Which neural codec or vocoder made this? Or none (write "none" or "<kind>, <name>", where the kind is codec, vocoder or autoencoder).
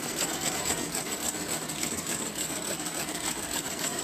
codec, SNAC